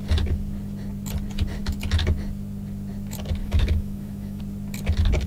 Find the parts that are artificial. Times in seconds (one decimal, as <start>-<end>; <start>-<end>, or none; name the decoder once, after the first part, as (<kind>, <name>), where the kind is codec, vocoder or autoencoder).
3.4-4.4 (autoencoder, DAC-VAE)